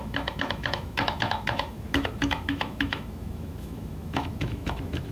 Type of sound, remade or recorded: remade